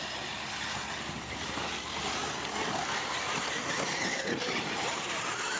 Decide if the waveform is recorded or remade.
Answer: recorded